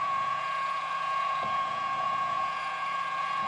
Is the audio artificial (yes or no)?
yes